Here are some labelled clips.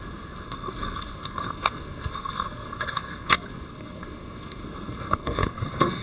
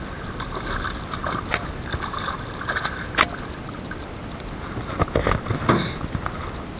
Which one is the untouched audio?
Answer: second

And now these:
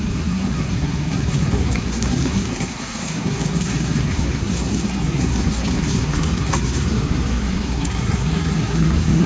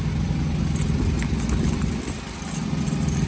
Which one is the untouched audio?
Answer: second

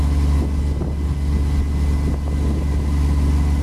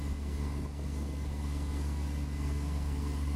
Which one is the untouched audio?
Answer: first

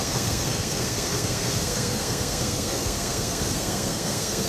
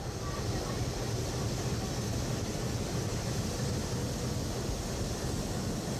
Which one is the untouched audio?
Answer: second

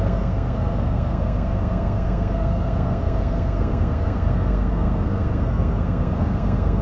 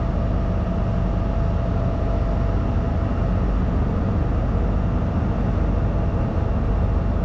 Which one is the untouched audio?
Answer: second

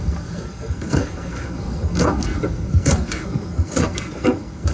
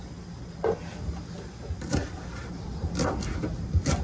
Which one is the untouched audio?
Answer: second